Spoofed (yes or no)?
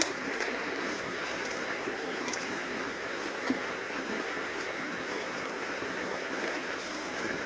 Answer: yes